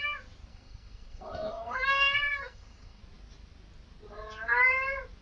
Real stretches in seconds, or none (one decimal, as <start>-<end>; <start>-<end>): 0.0-0.5; 3.0-5.2